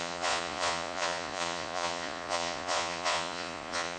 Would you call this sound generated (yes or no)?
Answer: yes